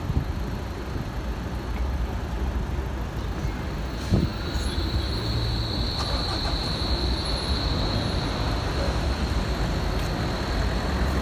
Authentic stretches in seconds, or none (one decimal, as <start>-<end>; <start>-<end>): 0.0-11.2